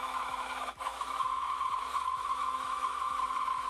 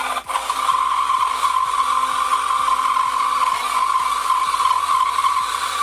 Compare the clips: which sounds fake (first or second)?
first